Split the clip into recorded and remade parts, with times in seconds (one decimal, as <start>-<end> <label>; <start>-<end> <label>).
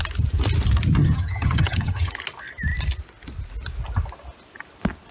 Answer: 0.0-1.0 recorded; 1.0-2.1 remade; 2.1-5.1 recorded